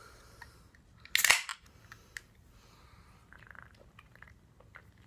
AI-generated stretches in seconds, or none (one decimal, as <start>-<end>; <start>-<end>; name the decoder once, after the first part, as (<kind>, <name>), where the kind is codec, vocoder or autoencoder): none